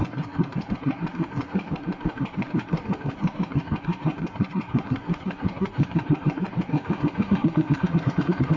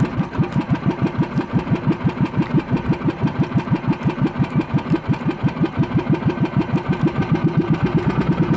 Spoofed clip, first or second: first